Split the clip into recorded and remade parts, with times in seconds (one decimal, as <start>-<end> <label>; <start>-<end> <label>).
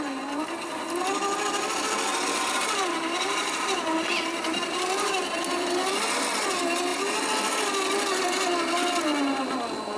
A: 0.0-2.1 recorded; 2.1-5.9 remade; 5.9-10.0 recorded